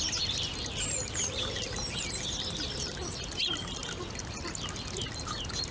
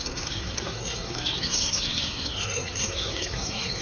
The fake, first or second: second